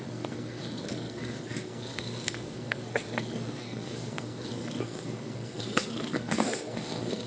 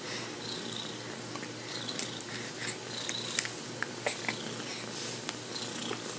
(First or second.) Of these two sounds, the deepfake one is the first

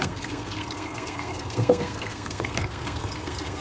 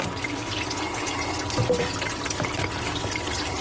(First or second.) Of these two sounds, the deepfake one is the first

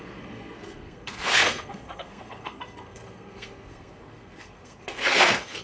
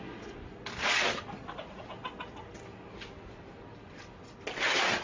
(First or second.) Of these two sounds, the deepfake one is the first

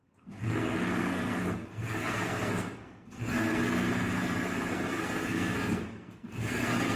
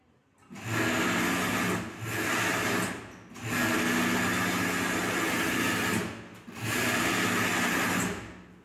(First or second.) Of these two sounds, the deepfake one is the first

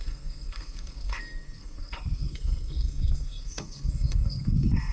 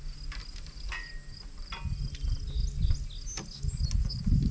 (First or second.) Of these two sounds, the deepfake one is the first